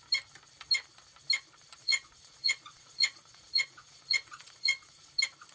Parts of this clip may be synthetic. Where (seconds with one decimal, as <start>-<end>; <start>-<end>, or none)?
1.8-5.1

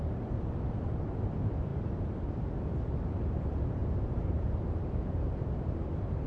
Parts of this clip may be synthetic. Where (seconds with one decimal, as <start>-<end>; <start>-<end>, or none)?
none

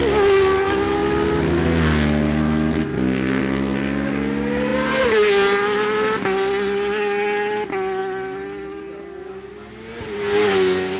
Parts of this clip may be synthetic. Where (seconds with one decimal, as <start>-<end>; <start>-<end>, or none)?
none

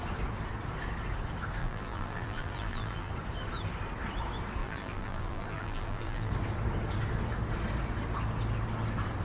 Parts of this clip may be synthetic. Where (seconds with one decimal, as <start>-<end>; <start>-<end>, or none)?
1.6-3.1; 4.6-6.3

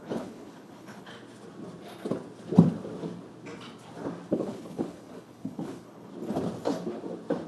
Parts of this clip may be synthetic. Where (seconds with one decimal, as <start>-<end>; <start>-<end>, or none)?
0.0-1.1; 4.3-6.1